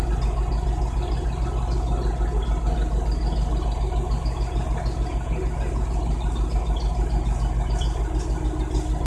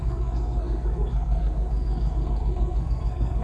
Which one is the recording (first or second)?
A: first